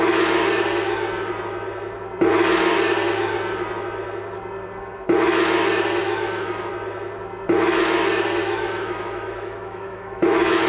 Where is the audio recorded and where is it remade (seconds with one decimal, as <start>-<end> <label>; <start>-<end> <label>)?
0.0-6.0 recorded; 6.0-6.7 remade; 6.7-8.4 recorded; 8.4-10.7 remade

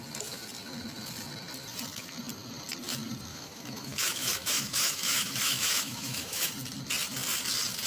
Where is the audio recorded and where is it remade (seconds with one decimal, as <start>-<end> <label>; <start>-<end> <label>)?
0.0-3.3 recorded; 3.3-6.5 remade; 6.5-7.9 recorded

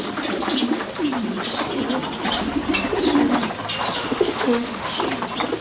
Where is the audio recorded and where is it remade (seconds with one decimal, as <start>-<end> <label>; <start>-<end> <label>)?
0.0-4.0 recorded; 4.0-5.0 remade; 5.0-5.6 recorded